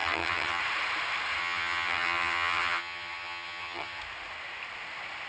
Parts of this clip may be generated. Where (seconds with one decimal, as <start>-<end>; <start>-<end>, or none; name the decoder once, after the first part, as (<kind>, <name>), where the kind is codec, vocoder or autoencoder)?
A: 0.0-0.6 (vocoder, HiFi-GAN); 1.4-4.0